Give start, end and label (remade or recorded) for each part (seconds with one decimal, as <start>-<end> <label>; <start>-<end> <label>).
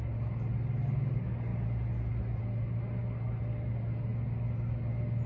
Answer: 0.0-5.3 recorded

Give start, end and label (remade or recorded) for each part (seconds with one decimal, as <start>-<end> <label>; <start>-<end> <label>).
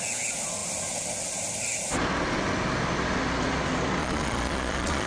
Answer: 0.0-4.0 recorded; 4.0-5.1 remade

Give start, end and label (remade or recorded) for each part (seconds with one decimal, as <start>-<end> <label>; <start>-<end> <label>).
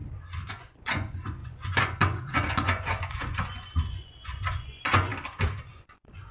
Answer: 0.0-0.5 recorded; 0.5-5.1 remade; 5.1-5.6 recorded; 5.6-6.3 remade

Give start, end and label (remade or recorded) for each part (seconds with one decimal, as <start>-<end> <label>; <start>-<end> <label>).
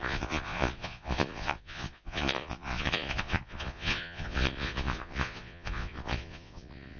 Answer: 0.0-7.0 remade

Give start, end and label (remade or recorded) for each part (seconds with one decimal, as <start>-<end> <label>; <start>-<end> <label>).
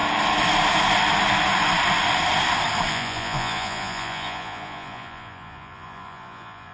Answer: 0.0-2.9 recorded; 2.9-6.7 remade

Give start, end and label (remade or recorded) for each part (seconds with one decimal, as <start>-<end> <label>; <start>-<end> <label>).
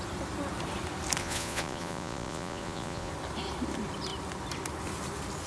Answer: 0.0-1.2 recorded; 1.2-3.1 remade; 3.1-5.5 recorded